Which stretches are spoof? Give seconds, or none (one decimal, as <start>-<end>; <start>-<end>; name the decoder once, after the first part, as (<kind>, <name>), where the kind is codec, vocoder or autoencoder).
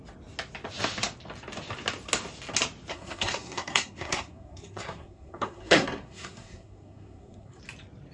2.9-7.6 (codec, SNAC)